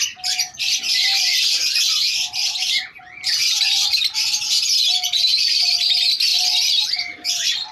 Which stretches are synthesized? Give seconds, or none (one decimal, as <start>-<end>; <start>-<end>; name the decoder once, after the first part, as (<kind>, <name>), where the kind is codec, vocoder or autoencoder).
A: none